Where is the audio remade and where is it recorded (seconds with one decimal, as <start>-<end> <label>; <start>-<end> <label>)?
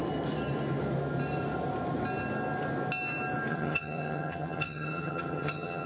0.0-3.5 recorded; 3.5-5.9 remade